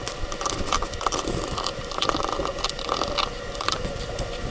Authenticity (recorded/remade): remade